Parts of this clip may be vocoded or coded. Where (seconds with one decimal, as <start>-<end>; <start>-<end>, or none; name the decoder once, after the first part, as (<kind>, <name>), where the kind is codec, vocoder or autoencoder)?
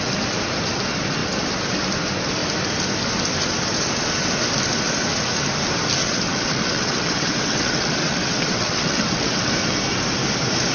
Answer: 6.0-9.5 (vocoder, WaveNeXt)